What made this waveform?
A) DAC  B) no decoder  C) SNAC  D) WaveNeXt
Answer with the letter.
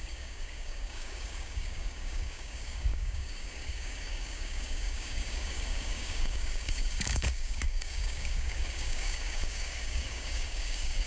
A